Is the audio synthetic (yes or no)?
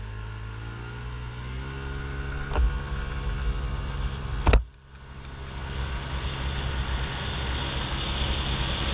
no